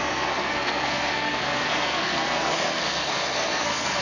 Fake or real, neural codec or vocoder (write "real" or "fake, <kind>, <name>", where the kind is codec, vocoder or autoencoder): fake, codec, SNAC